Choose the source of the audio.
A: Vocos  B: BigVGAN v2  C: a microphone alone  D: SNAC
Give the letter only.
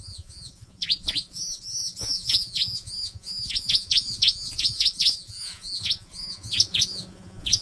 A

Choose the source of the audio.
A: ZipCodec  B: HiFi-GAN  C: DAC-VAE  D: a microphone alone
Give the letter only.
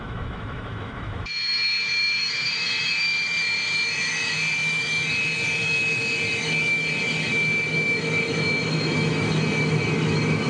C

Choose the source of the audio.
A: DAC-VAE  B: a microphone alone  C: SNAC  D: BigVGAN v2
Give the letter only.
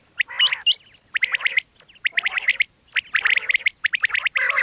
B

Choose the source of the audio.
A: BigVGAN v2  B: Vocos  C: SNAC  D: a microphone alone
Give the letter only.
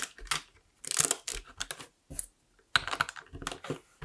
D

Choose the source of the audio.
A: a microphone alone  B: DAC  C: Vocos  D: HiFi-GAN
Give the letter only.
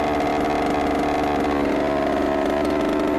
A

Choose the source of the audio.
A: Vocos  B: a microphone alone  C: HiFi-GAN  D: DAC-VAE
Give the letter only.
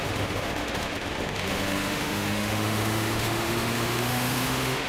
D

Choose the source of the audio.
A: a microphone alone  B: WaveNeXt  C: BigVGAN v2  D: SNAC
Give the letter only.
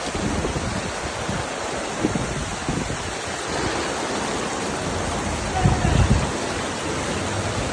A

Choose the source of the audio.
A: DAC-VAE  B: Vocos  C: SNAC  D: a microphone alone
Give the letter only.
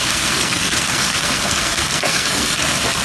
C